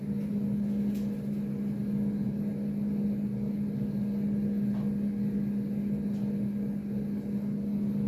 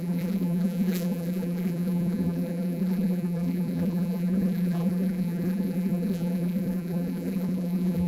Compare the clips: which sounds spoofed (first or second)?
second